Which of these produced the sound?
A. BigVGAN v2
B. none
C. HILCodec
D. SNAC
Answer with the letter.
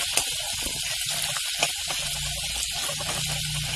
B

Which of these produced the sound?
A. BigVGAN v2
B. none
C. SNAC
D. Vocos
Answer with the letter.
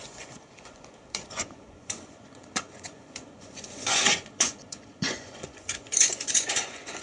D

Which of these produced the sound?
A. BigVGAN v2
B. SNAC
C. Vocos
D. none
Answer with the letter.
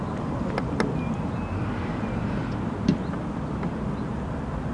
D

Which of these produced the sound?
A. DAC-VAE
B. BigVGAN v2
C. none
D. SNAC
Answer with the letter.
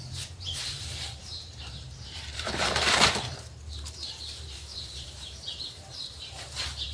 B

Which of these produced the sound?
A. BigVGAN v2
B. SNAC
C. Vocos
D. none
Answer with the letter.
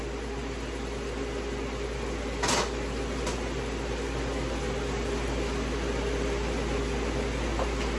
D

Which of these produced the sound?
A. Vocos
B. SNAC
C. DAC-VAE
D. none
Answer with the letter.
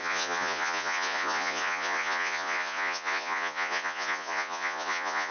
A